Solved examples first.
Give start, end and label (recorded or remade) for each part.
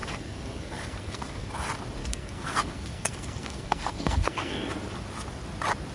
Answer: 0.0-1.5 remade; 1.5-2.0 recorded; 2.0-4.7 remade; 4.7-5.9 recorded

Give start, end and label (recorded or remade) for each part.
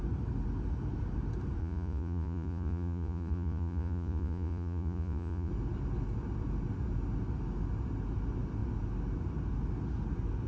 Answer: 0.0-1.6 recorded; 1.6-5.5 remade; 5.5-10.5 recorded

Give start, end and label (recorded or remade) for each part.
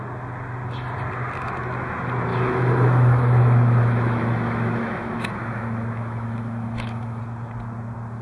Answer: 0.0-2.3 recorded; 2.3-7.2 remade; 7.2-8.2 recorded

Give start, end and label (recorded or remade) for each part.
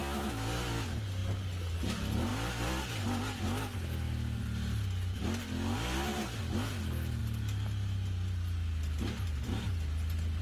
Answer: 0.0-10.4 recorded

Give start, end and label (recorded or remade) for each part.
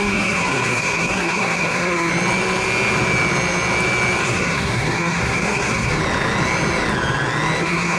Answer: 0.0-2.1 remade; 2.1-4.2 recorded; 4.2-6.0 remade; 6.0-7.6 recorded; 7.6-8.0 remade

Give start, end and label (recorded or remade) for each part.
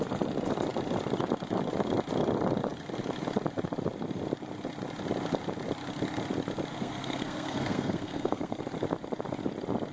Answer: 0.0-6.7 recorded; 6.7-8.6 remade; 8.6-9.9 recorded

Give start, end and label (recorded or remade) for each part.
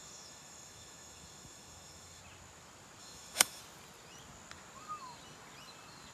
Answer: 0.0-2.2 remade; 2.2-3.0 recorded; 3.0-3.6 remade; 3.6-6.1 recorded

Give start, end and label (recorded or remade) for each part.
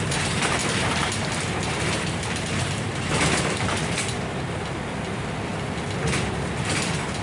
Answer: 0.0-5.5 remade; 5.5-6.6 recorded; 6.6-7.2 remade